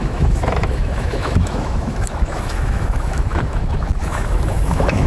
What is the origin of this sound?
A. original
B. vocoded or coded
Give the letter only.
B